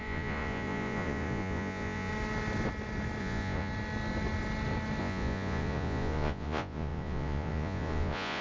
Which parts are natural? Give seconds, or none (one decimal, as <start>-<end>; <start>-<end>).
2.1-3.2; 3.7-5.0